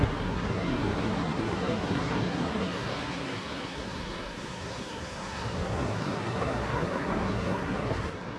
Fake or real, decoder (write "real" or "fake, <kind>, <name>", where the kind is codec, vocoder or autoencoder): fake, codec, SNAC